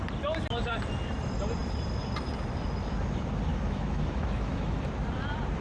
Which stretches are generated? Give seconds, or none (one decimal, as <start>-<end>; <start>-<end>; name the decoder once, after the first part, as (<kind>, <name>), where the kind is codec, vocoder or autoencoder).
3.5-4.8 (autoencoder, DAC-VAE)